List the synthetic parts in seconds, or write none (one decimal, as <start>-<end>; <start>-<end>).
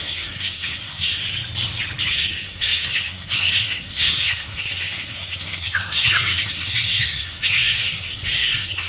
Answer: 0.0-1.2; 2.1-8.9